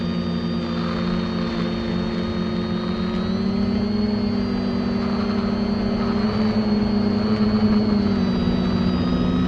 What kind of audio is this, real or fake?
real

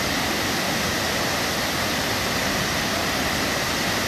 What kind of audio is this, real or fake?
real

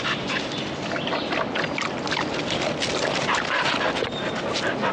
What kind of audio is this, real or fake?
real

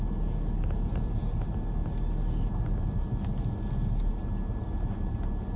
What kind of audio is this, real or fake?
real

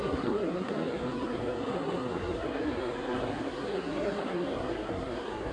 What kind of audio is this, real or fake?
fake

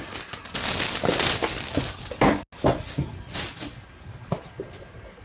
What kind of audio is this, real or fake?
real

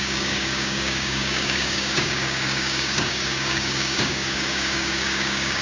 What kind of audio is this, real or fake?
fake